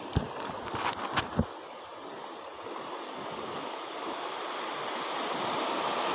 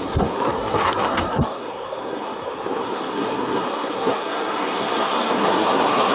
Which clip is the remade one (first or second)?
second